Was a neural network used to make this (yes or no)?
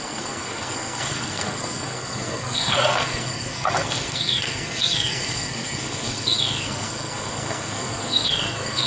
yes